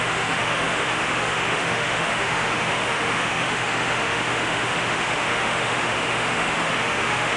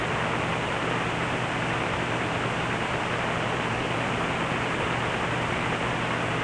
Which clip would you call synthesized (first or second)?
first